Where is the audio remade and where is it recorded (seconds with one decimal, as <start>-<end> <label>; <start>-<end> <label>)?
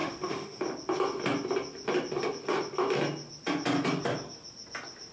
0.0-0.6 remade; 0.6-5.1 recorded